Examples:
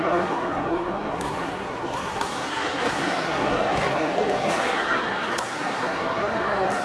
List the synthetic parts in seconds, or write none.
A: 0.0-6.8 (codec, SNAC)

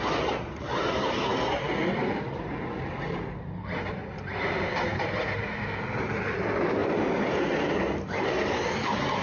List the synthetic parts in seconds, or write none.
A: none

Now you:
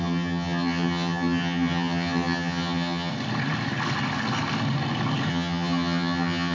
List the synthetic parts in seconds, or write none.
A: 0.0-3.1 (vocoder, HiFi-GAN); 5.3-6.5

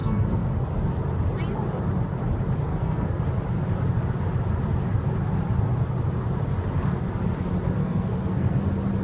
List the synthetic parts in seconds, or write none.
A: 0.0-0.5 (codec, SNAC); 2.7-3.2; 7.8-8.6

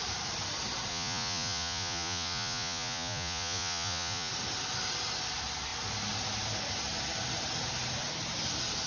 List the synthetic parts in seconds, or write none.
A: 0.9-4.3 (vocoder, Vocos)

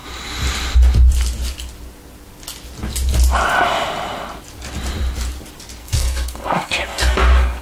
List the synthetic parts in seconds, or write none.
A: 5.8-7.6 (codec, SNAC)

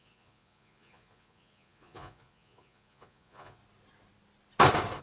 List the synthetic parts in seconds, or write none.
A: 0.0-3.6 (vocoder, Vocos)